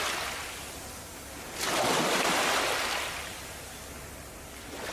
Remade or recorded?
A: recorded